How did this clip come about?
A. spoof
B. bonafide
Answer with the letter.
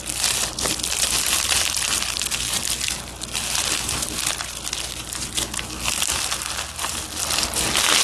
B